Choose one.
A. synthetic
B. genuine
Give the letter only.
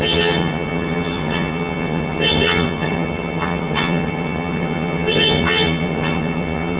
A